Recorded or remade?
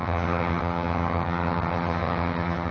remade